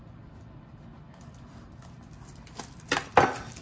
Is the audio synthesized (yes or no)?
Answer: no